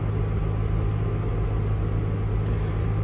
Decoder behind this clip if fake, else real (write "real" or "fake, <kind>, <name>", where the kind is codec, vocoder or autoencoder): real